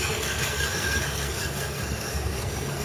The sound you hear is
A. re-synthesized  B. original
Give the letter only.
A